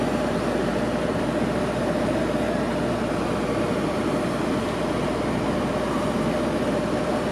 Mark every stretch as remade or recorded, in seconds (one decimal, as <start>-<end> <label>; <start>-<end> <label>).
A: 0.0-7.3 recorded